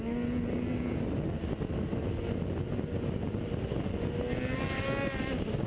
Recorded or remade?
recorded